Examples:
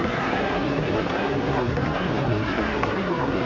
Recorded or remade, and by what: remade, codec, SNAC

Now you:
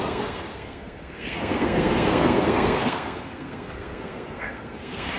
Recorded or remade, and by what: remade, codec, SNAC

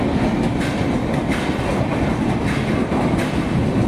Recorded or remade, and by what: recorded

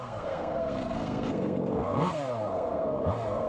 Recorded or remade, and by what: remade, codec, SNAC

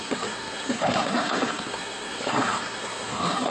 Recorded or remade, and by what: remade, codec, SNAC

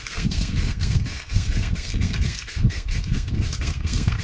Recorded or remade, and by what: remade, codec, SNAC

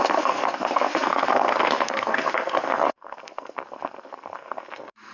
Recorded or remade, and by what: remade, codec, SNAC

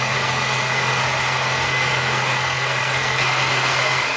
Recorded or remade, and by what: remade, codec, SNAC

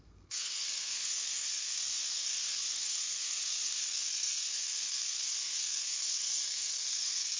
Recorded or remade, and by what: remade, codec, SNAC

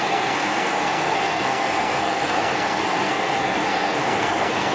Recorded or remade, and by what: remade, codec, SNAC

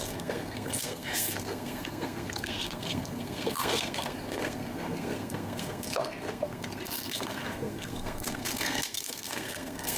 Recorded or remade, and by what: remade, codec, SNAC